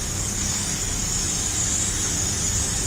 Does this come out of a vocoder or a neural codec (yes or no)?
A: no